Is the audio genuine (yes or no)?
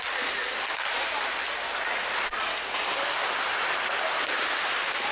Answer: yes